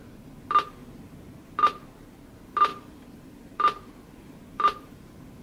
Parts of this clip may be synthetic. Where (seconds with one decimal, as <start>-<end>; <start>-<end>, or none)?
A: 0.8-2.2; 2.7-5.4